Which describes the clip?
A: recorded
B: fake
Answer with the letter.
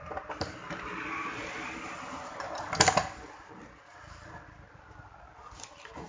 A